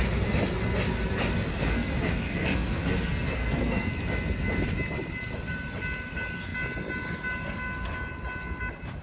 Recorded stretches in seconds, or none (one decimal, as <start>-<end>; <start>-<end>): 0.0-1.5; 3.9-9.0